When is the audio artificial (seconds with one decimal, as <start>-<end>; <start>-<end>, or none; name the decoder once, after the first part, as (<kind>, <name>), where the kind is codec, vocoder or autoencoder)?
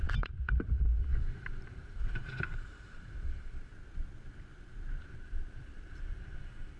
0.0-3.7 (vocoder, BigVGAN v2); 5.0-6.8